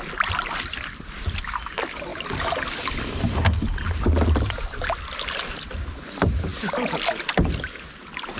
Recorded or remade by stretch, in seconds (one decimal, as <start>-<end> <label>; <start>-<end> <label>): 0.0-8.4 recorded

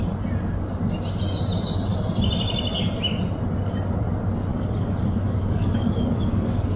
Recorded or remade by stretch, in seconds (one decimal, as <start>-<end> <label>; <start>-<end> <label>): 0.0-4.5 recorded; 4.5-6.8 remade